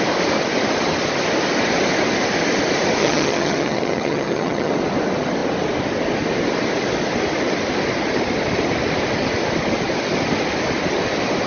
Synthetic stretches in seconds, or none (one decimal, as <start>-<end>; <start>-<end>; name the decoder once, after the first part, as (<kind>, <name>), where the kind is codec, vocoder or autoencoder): 3.0-4.7 (vocoder, HiFi-GAN)